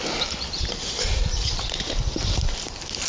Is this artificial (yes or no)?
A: no